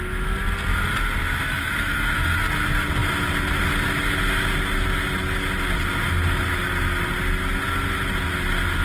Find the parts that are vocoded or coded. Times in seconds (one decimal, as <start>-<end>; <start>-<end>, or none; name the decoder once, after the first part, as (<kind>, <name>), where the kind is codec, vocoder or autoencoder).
1.2-2.4 (autoencoder, DAC-VAE)